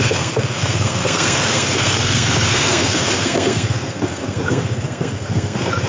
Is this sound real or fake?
fake